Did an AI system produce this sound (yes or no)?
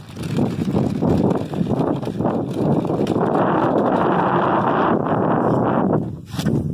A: no